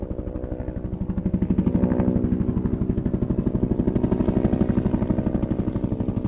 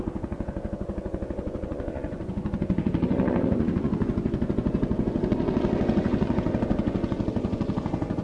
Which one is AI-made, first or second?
second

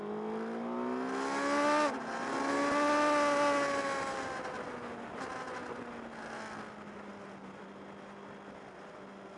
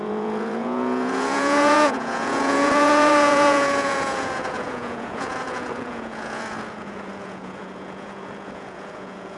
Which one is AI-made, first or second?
second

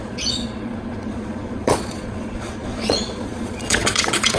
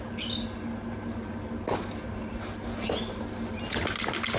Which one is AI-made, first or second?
first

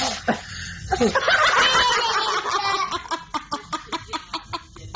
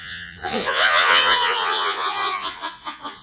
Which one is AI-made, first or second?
second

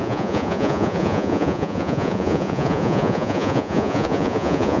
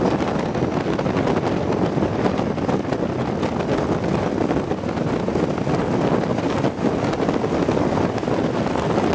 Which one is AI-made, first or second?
first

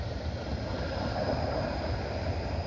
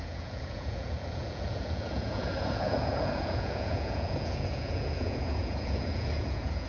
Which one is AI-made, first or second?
second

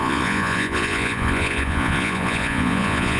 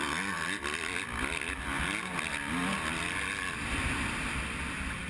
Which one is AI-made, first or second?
first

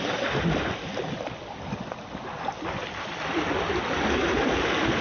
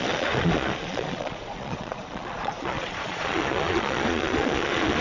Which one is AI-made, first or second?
second